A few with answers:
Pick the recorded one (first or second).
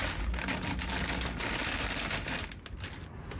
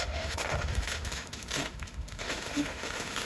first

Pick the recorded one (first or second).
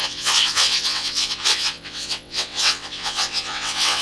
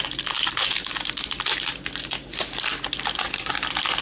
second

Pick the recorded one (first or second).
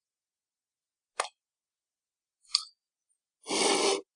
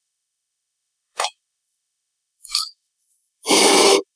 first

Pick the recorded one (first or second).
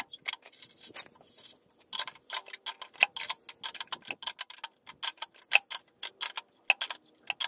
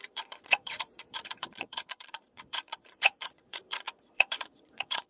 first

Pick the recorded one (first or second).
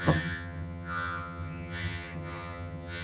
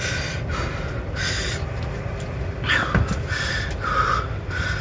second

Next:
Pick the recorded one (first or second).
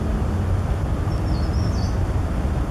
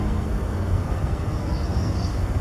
first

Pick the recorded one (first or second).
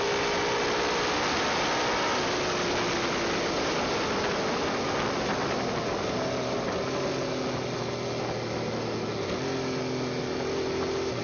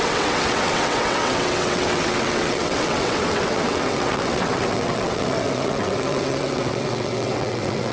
first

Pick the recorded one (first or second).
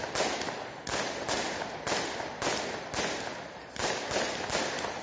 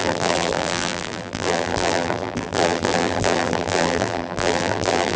first